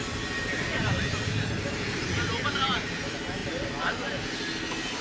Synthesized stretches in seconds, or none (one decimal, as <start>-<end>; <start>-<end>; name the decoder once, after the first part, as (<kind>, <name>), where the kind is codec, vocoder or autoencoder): none